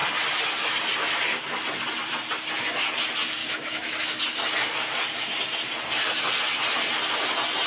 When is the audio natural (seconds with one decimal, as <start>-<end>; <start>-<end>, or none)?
0.0-3.4; 4.2-7.7